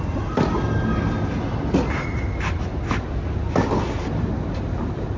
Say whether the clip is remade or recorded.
recorded